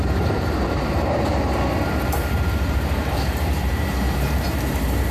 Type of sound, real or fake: fake